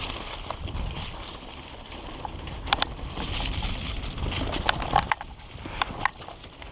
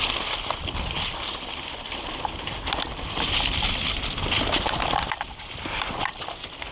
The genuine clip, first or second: first